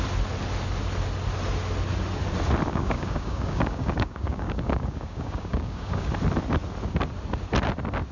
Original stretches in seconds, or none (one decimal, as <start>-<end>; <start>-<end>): 0.0-2.7; 6.1-8.1